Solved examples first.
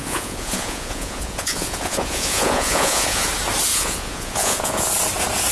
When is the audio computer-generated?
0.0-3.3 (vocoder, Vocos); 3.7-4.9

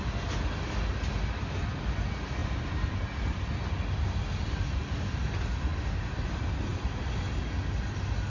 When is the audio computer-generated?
2.4-3.4 (vocoder, BigVGAN v2); 5.7-6.2; 6.7-7.4

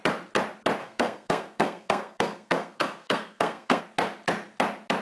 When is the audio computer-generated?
0.8-3.8 (codec, SNAC)

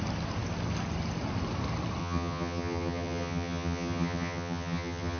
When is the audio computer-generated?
2.0-5.2 (vocoder, HiFi-GAN)

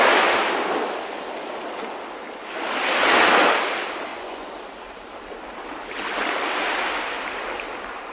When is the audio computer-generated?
4.1-4.6 (vocoder, Vocos)

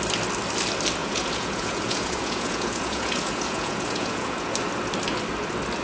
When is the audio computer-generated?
1.0-4.5 (vocoder, Vocos)

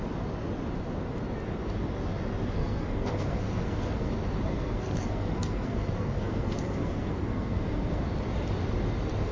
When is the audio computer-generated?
2.6-4.1 (codec, SNAC); 4.5-8.0